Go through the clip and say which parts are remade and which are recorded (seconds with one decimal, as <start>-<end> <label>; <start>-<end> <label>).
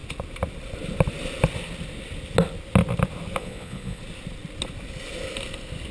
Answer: 0.0-3.4 recorded; 3.4-4.0 remade; 4.0-5.9 recorded